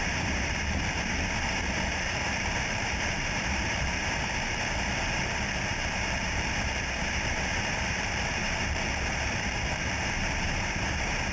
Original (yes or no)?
no